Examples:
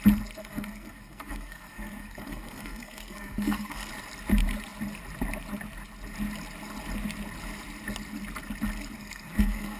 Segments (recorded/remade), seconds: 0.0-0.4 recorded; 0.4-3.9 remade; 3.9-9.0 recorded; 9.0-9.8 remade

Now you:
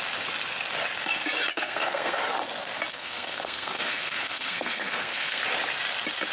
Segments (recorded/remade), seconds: 0.0-1.5 recorded; 1.5-2.2 remade; 2.2-2.9 recorded; 2.9-5.4 remade; 5.4-6.3 recorded

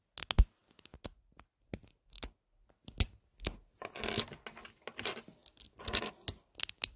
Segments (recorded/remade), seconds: 0.0-7.0 recorded

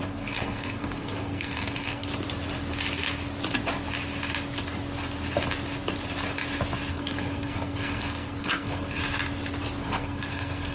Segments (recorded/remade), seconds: 0.0-2.1 remade; 2.1-6.9 recorded; 6.9-9.0 remade; 9.0-9.8 recorded; 9.8-10.7 remade

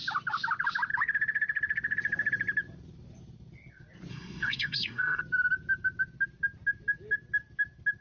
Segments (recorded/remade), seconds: 0.0-4.1 recorded; 4.1-5.2 remade; 5.2-8.0 recorded